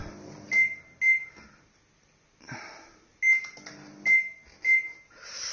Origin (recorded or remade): recorded